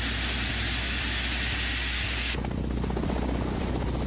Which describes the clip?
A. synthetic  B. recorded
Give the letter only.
B